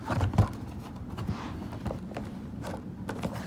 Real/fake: real